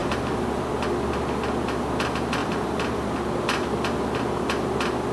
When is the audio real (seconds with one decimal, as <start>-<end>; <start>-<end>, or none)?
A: 0.7-2.4; 3.1-5.1